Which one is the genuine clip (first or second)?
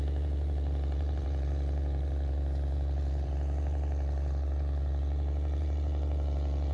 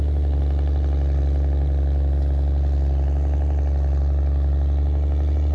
second